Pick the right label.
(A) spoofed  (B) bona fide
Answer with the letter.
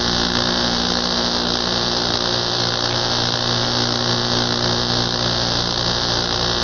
B